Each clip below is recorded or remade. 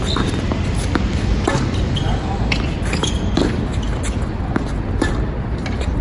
recorded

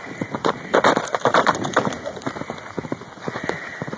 recorded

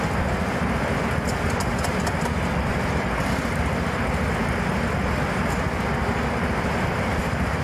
recorded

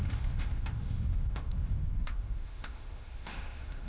remade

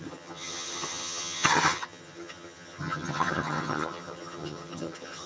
remade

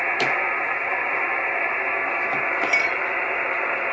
recorded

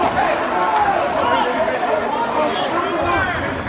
recorded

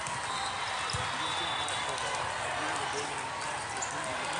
recorded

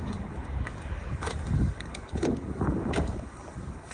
remade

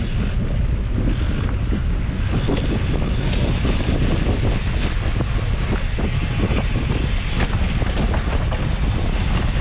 recorded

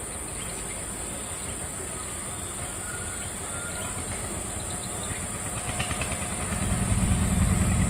recorded